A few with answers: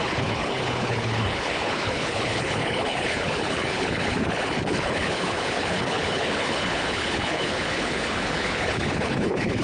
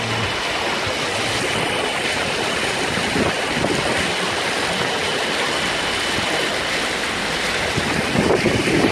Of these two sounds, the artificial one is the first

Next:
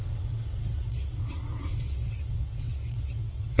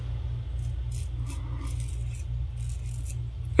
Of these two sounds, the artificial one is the first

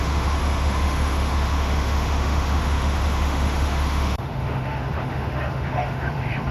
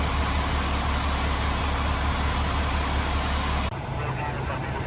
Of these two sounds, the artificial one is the first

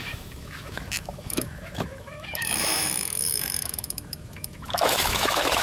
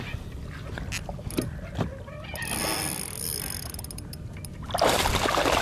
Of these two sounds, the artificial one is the first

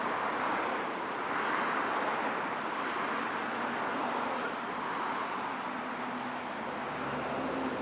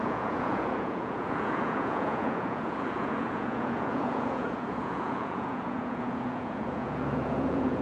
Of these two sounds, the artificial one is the second